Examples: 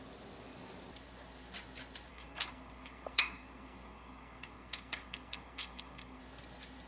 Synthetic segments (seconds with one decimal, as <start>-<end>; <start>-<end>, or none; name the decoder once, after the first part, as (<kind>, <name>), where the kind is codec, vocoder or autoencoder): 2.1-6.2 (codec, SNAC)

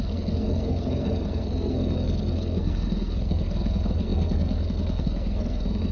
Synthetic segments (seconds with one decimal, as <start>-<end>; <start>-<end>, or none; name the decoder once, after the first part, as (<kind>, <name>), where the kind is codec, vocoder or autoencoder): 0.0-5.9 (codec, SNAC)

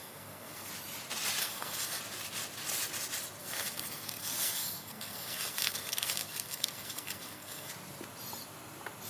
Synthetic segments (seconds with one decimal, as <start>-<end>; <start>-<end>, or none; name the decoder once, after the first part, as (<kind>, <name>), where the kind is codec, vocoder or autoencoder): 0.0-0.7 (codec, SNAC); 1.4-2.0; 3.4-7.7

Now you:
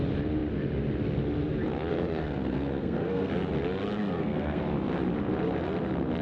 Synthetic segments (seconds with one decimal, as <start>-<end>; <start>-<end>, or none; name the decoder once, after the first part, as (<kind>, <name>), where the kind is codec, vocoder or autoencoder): 1.9-3.3 (codec, SNAC); 4.0-4.6

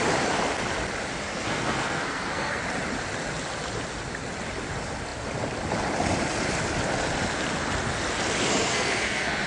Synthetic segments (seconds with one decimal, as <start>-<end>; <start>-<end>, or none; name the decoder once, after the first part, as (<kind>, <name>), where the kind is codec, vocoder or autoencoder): 1.2-2.6 (codec, SNAC); 8.5-9.5

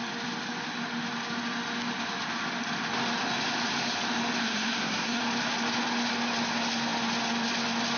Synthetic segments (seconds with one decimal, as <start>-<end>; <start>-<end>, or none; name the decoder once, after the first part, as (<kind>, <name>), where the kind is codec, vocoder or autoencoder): 4.4-5.2 (codec, SNAC)

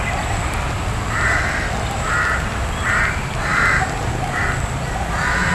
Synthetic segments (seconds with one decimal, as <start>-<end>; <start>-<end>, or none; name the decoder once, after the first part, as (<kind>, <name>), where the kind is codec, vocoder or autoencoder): none